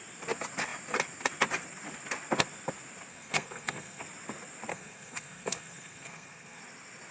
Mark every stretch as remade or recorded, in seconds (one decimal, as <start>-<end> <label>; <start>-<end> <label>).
0.0-3.1 recorded; 3.1-4.0 remade; 4.0-4.7 recorded; 4.7-6.6 remade; 6.6-7.1 recorded